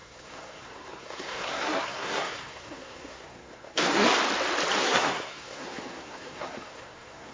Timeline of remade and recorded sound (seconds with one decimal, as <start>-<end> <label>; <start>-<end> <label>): 0.0-4.1 remade; 4.1-4.8 recorded; 4.8-7.3 remade